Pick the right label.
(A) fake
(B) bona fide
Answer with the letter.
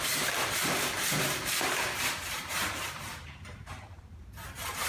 A